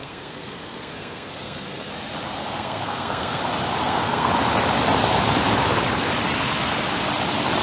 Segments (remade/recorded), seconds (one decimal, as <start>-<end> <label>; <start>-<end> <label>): 0.0-1.9 remade; 1.9-2.4 recorded; 2.4-3.4 remade; 3.4-3.8 recorded; 3.8-4.3 remade; 4.3-7.6 recorded